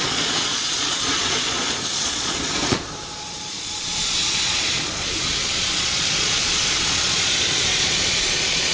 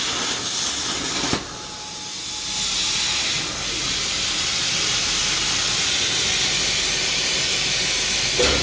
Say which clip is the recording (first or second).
second